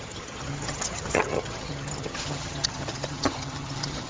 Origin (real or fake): fake